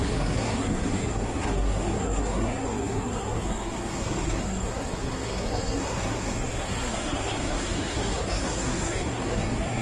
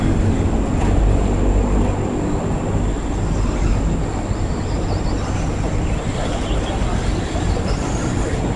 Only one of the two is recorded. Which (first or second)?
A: second